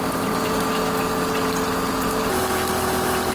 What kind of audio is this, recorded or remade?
remade